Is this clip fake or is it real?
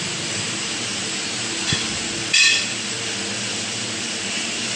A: fake